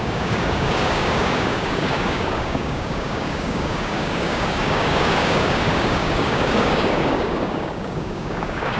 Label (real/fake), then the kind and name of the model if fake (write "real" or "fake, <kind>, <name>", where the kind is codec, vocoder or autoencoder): fake, codec, DAC